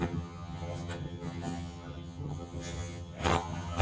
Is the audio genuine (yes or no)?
no